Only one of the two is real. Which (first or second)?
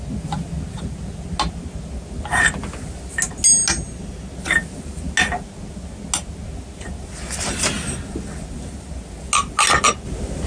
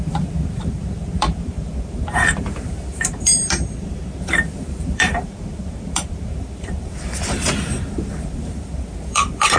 first